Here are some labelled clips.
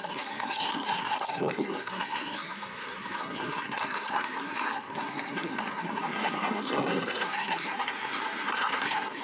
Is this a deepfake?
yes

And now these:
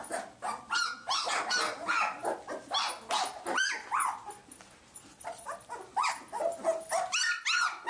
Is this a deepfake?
no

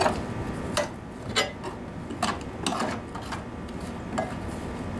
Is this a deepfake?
no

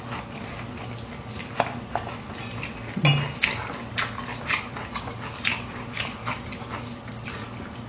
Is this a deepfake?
no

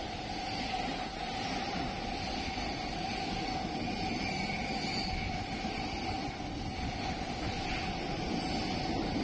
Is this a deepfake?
no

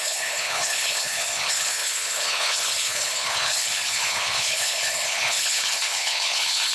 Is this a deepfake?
yes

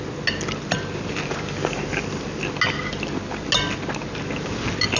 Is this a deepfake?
no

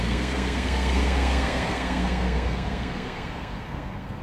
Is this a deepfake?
yes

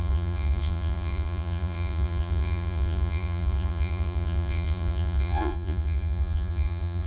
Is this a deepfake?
yes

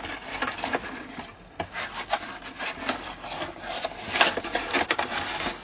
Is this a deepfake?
no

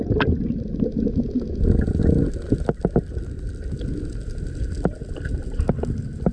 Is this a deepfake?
no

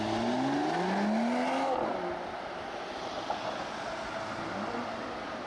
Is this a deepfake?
no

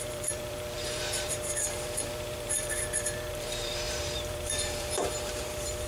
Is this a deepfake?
yes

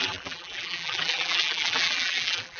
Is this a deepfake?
yes